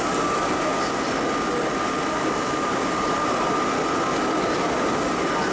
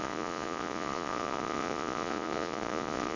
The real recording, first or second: first